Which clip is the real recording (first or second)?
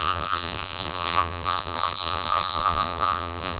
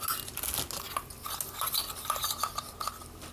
second